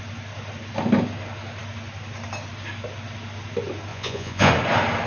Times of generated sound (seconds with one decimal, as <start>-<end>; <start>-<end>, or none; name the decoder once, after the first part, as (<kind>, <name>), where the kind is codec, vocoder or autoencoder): 3.9-4.5 (vocoder, Vocos)